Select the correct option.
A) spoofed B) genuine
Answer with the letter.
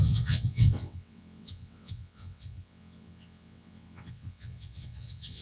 A